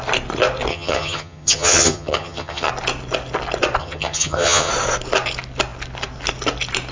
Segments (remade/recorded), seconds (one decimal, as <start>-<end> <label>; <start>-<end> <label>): 0.0-0.7 recorded; 0.7-2.7 remade; 2.7-3.8 recorded; 3.8-4.7 remade; 4.7-6.9 recorded